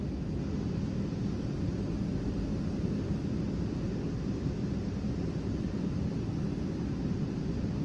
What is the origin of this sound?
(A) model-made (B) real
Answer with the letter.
B